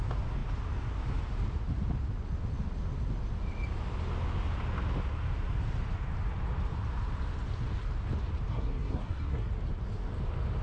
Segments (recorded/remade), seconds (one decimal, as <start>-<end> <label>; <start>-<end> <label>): 0.0-8.5 recorded; 8.5-9.5 remade; 9.5-10.6 recorded